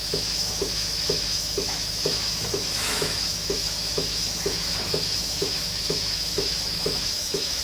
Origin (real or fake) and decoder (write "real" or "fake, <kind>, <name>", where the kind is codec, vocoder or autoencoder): fake, autoencoder, DAC-VAE